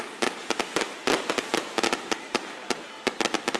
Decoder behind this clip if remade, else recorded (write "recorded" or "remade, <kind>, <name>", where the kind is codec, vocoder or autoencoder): recorded